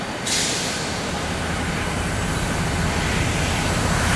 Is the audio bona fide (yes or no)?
yes